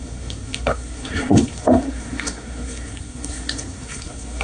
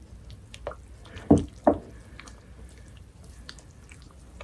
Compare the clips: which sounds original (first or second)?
second